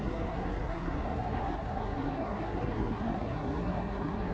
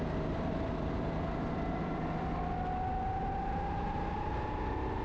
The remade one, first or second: first